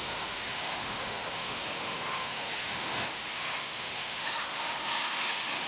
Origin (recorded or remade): remade